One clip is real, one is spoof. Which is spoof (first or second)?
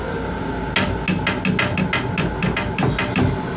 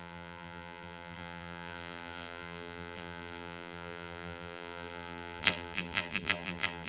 second